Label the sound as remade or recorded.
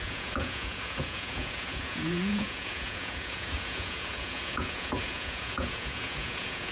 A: remade